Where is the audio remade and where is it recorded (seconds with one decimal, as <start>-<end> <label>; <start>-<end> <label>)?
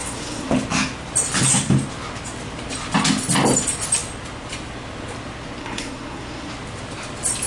0.0-0.5 remade; 0.5-5.6 recorded; 5.6-6.5 remade; 6.5-7.5 recorded